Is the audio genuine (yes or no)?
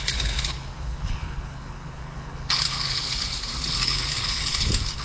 no